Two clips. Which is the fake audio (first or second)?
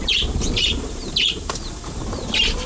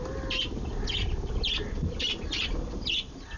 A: first